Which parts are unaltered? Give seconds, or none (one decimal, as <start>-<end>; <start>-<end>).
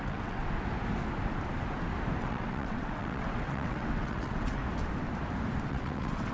0.4-2.2; 4.6-5.7